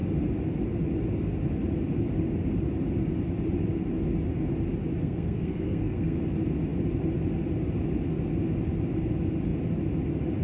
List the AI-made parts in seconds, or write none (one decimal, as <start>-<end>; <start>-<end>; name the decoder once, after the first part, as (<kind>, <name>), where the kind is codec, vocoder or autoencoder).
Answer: 5.0-6.2 (codec, SNAC)